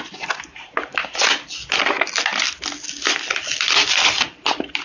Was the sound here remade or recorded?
recorded